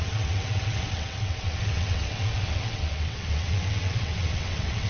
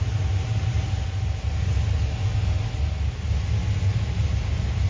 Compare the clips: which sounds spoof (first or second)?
first